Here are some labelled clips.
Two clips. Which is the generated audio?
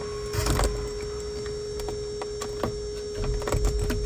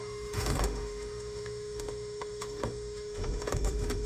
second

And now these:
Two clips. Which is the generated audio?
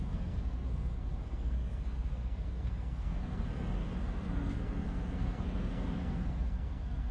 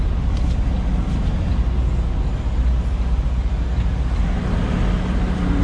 first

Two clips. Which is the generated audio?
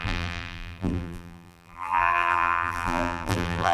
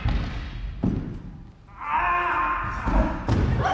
first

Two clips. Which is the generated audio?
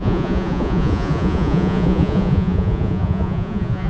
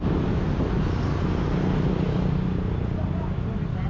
first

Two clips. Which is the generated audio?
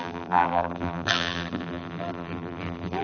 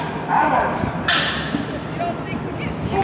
first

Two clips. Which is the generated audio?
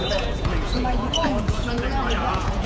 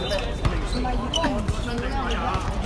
first